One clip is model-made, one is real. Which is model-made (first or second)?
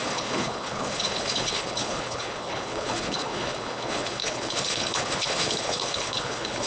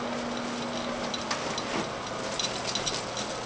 first